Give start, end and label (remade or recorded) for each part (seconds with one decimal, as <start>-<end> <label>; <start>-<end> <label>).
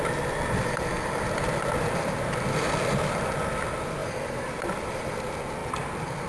0.0-4.0 recorded; 4.0-4.9 remade; 4.9-5.6 recorded; 5.6-6.3 remade